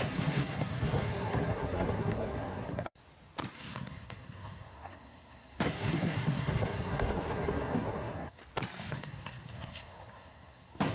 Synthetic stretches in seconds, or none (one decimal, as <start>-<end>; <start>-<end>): 0.0-3.0; 3.5-8.4; 8.9-10.9